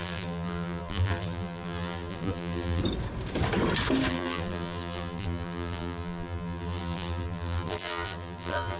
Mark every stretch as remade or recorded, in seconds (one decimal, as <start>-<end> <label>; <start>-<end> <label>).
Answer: 0.0-2.8 remade; 2.8-4.1 recorded; 4.1-8.8 remade